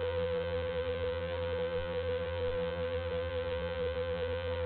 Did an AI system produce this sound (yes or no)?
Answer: yes